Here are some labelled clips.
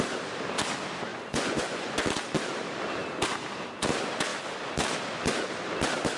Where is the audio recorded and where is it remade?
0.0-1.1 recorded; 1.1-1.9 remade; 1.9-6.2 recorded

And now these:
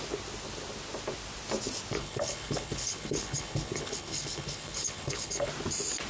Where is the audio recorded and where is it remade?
0.0-2.0 recorded; 2.0-5.5 remade; 5.5-6.1 recorded

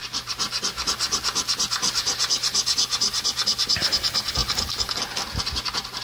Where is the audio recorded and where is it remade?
0.0-4.4 recorded; 4.4-4.9 remade; 4.9-6.0 recorded

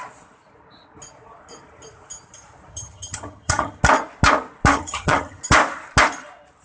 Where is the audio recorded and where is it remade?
0.0-2.7 recorded; 2.7-3.8 remade; 3.8-4.7 recorded; 4.7-5.4 remade; 5.4-6.6 recorded

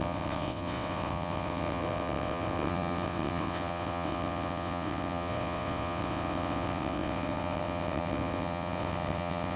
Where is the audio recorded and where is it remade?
0.0-9.6 remade

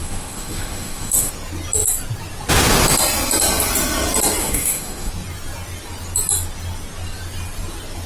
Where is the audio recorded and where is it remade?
0.0-1.3 remade; 1.3-4.4 recorded; 4.4-5.1 remade; 5.1-8.1 recorded

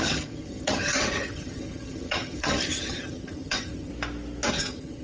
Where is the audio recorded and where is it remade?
0.0-3.9 remade; 3.9-4.5 recorded; 4.5-5.0 remade